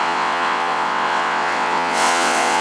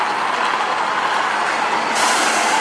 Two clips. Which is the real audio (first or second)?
second